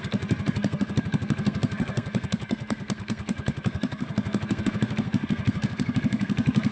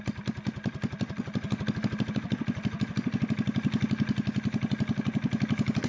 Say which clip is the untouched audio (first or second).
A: second